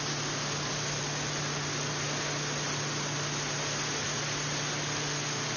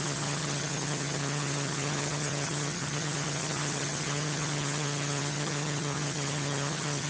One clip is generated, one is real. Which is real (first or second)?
first